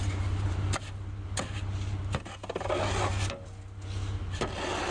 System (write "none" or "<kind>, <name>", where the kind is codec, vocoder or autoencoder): none